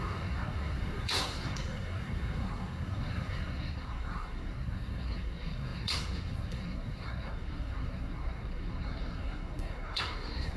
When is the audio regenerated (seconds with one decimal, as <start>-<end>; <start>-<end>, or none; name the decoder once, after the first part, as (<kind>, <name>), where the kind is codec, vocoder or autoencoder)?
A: 0.0-10.6 (codec, SNAC)